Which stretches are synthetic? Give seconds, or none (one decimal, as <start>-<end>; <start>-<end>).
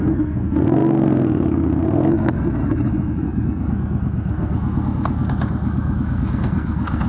0.0-7.1